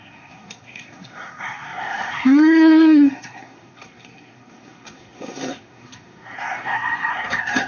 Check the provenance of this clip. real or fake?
fake